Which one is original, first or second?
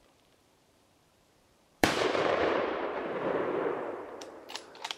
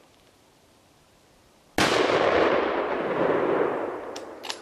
second